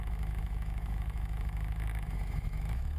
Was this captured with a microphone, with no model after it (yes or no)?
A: no